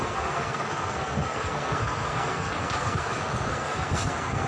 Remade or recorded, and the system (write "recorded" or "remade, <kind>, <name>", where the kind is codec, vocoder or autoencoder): remade, codec, SNAC